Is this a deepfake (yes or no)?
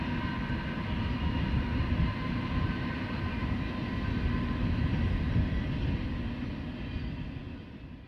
no